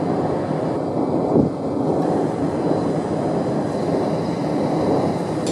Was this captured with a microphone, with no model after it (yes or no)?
yes